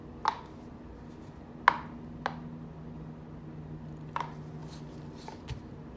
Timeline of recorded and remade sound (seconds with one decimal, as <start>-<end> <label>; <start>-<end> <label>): 0.0-6.0 recorded